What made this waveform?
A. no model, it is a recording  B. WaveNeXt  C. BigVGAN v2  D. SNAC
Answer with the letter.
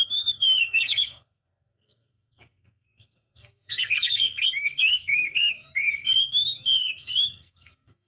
D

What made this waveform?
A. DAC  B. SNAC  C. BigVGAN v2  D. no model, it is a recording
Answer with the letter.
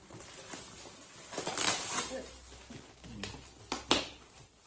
D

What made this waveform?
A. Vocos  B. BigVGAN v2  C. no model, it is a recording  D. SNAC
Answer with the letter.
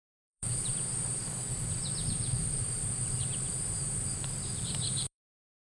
B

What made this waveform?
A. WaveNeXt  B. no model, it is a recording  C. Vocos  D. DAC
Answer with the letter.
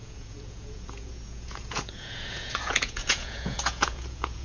C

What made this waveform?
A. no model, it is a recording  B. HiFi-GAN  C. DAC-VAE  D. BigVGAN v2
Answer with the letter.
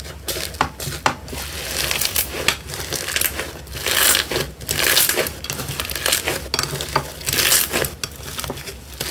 A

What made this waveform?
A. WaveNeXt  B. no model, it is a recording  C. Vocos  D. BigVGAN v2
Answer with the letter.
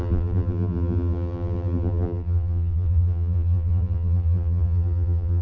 D